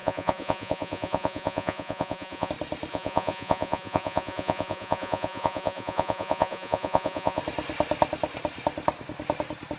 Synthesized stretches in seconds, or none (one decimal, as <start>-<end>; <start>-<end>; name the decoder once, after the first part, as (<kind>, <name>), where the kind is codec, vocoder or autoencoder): 0.0-2.5 (vocoder, Vocos); 2.9-7.4